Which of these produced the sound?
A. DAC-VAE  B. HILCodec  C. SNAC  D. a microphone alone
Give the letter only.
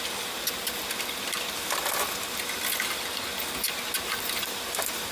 D